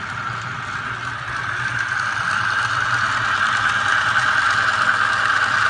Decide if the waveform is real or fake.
real